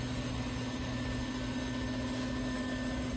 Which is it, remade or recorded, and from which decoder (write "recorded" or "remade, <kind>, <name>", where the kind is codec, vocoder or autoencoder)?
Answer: recorded